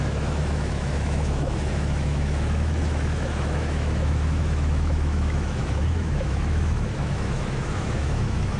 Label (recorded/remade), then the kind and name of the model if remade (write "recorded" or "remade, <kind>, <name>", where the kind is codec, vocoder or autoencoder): remade, autoencoder, DAC-VAE